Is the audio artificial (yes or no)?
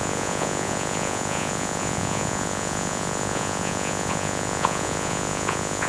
yes